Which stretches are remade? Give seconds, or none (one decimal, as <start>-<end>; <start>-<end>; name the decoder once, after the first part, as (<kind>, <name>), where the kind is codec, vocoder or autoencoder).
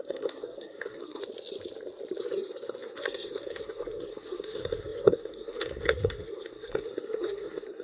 0.0-1.2 (codec, SNAC); 2.2-7.8